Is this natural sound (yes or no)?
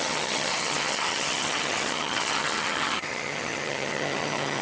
no